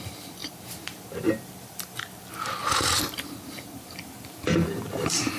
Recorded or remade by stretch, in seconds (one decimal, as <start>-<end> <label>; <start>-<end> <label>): 0.0-5.4 remade